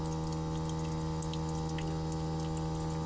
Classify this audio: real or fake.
real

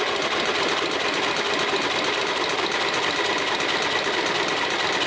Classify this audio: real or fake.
real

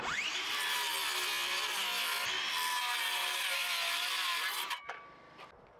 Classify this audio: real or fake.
real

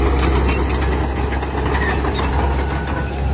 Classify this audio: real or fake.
real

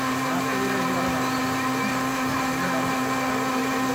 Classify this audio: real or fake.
real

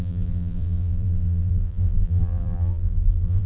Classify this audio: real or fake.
fake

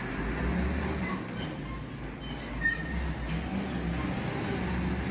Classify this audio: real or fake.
real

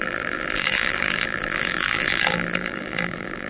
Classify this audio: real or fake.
fake